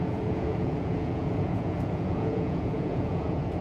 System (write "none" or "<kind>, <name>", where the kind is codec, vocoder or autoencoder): vocoder, Vocos